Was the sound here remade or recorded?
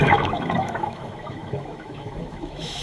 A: remade